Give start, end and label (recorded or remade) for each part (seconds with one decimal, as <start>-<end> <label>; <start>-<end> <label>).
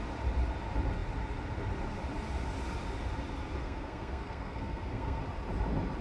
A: 0.0-3.6 recorded; 3.6-5.2 remade; 5.2-6.0 recorded